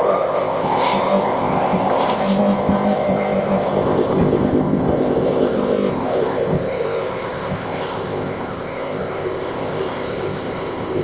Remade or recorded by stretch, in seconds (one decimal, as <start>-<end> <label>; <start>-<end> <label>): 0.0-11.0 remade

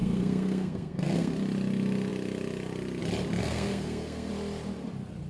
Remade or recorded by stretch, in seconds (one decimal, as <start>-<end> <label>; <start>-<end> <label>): 0.0-1.3 remade; 1.3-3.4 recorded; 3.4-4.3 remade; 4.3-5.3 recorded

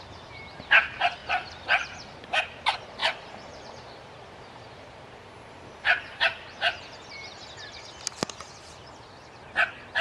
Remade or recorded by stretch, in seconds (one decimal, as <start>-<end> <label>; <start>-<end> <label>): 0.0-1.2 recorded; 1.2-2.4 remade; 2.4-3.0 recorded; 3.0-7.8 remade; 7.8-10.0 recorded